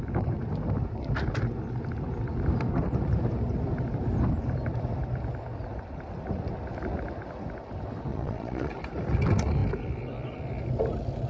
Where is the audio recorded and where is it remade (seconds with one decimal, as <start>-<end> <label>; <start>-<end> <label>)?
0.0-8.1 recorded; 8.1-8.7 remade; 8.7-11.3 recorded

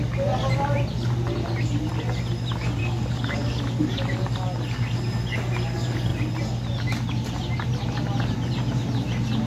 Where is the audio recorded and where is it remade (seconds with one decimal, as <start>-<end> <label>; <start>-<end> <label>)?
0.0-2.8 recorded; 2.8-4.2 remade; 4.2-9.5 recorded

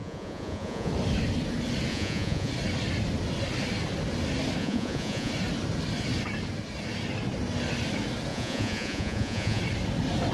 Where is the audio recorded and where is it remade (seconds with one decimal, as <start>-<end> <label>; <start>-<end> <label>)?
0.0-0.9 remade; 0.9-1.9 recorded; 1.9-2.5 remade; 2.5-4.6 recorded; 4.6-5.3 remade; 5.3-8.3 recorded; 8.3-9.6 remade; 9.6-10.3 recorded

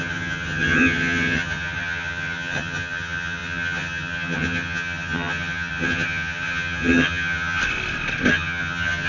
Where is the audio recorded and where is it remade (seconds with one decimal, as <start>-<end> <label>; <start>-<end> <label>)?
0.0-7.6 remade; 7.6-8.3 recorded; 8.3-9.1 remade